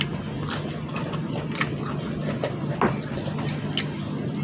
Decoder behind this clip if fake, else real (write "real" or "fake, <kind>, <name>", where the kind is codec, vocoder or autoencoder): real